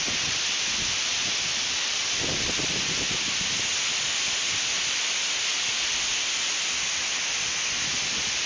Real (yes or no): yes